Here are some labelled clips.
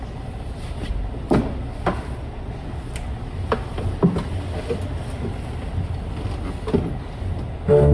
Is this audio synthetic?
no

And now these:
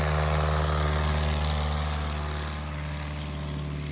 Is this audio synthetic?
no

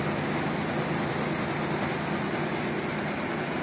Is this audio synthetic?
no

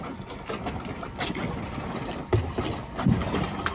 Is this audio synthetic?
no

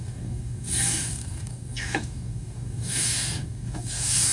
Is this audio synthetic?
yes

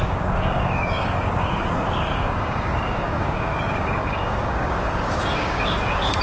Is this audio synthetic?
yes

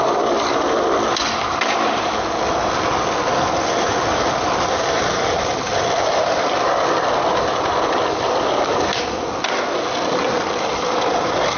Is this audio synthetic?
no